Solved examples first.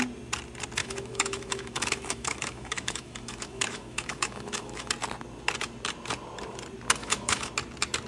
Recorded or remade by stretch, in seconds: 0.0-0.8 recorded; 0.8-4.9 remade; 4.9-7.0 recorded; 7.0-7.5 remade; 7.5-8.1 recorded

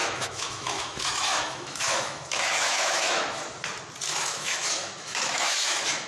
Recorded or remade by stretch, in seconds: 0.0-3.4 remade; 3.4-4.1 recorded; 4.1-6.1 remade

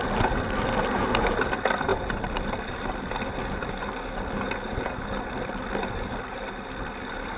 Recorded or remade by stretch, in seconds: 0.0-7.4 recorded